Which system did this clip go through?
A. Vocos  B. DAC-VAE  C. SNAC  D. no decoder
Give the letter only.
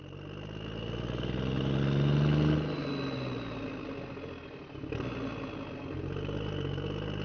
D